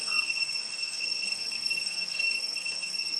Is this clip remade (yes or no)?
yes